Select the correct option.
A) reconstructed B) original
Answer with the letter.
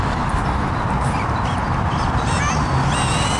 B